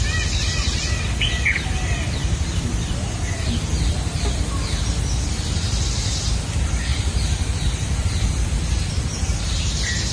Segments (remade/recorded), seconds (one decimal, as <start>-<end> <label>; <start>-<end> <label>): 0.0-6.9 recorded; 6.9-8.3 remade; 8.3-10.1 recorded